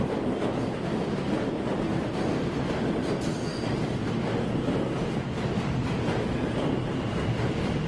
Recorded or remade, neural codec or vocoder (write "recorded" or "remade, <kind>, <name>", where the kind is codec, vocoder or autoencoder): remade, vocoder, BigVGAN v2